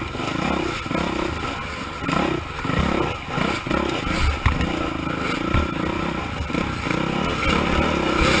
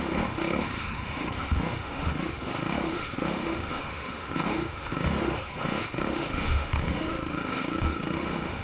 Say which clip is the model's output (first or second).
second